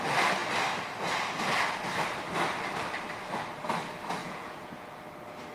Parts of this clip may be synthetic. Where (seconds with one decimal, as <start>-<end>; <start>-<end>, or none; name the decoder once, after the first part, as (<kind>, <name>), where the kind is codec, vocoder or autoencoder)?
4.2-5.0 (vocoder, Vocos)